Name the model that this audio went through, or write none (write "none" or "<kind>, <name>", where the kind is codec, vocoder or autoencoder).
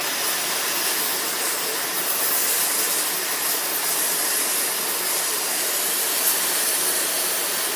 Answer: none